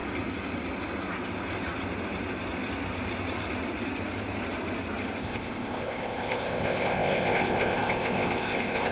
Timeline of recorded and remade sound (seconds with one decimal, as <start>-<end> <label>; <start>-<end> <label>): 0.0-5.2 recorded; 5.2-8.9 remade